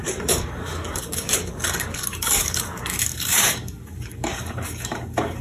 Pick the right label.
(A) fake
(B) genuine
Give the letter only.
A